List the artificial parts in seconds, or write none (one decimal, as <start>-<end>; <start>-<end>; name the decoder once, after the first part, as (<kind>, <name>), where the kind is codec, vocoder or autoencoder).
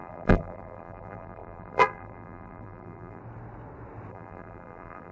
0.0-3.2 (vocoder, BigVGAN v2); 4.1-5.1